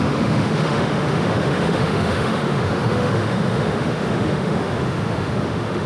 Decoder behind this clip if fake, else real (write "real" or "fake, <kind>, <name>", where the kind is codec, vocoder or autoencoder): fake, autoencoder, DAC-VAE